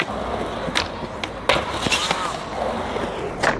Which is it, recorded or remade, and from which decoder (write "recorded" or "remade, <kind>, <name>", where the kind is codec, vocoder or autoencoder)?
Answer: recorded